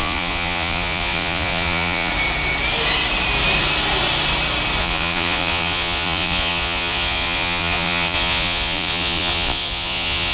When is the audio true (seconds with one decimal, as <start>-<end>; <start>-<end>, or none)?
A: 2.1-4.8